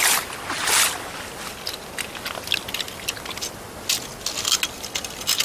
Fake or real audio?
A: real